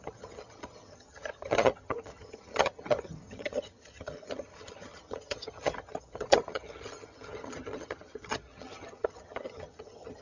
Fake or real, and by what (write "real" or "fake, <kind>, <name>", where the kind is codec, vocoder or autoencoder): fake, vocoder, HiFi-GAN